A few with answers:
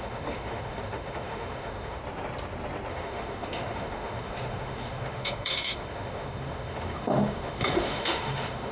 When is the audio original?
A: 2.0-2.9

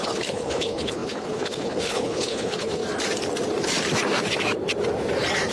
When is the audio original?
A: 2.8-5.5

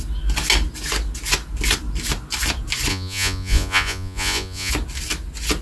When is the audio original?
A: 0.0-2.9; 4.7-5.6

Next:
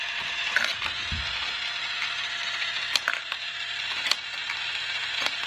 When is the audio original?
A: 0.0-5.5